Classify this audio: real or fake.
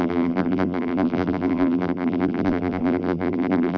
fake